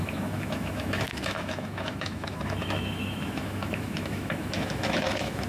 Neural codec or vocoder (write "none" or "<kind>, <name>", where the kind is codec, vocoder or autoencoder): autoencoder, DAC-VAE